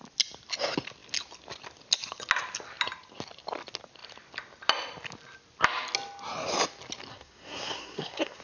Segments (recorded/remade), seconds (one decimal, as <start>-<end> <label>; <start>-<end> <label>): 0.0-7.1 recorded; 7.1-8.4 remade